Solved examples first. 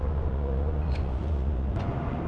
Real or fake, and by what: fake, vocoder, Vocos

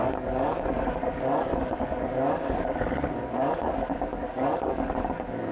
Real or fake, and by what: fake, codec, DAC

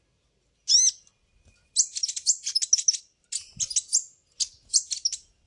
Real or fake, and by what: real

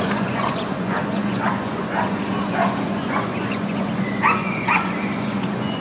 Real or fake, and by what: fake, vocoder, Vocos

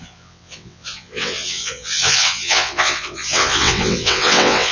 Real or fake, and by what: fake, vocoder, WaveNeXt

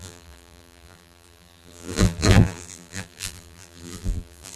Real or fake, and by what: fake, vocoder, BigVGAN v2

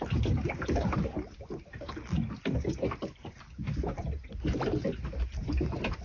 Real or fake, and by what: real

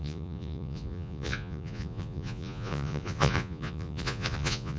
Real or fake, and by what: fake, vocoder, Vocos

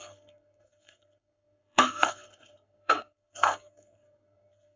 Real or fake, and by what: fake, codec, SNAC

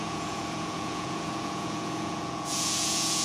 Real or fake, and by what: fake, vocoder, Vocos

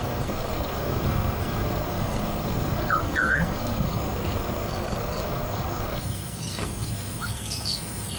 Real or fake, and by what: fake, codec, SNAC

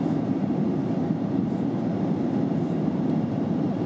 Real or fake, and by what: fake, vocoder, BigVGAN v2